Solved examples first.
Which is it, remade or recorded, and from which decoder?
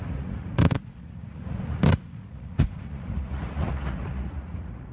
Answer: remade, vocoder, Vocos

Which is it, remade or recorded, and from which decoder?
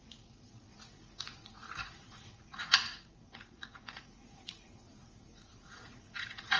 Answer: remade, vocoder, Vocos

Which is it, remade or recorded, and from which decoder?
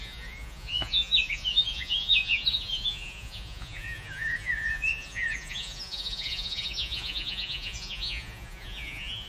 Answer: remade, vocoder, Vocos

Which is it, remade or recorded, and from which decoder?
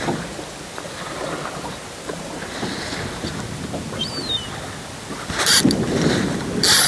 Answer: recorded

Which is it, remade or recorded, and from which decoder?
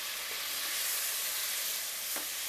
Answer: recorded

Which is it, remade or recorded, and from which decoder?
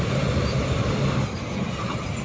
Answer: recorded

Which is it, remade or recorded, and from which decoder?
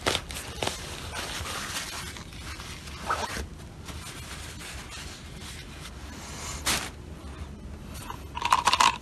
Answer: recorded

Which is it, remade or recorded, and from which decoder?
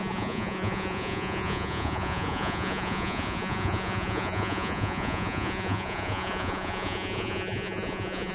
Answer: remade, vocoder, Vocos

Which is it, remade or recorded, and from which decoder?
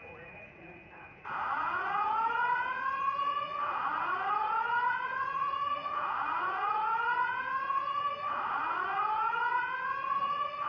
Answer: remade, vocoder, Vocos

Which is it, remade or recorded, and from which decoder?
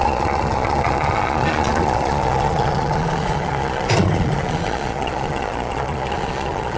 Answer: remade, vocoder, Vocos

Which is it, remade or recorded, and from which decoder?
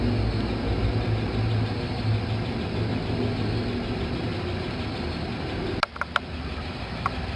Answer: recorded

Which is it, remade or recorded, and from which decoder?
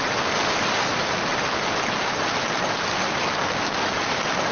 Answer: recorded